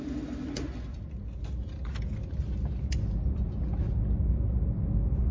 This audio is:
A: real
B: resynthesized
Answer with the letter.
A